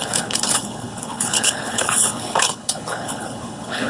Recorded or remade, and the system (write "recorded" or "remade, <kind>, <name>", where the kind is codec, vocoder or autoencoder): remade, codec, HILCodec